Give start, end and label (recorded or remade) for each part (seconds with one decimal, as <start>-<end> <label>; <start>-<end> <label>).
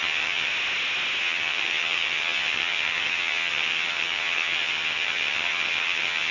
0.0-0.5 remade; 0.5-1.2 recorded; 1.2-6.3 remade